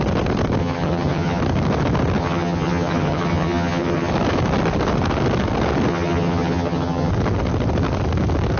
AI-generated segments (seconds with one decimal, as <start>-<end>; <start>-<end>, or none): 0.6-1.4; 2.2-4.1; 5.9-7.1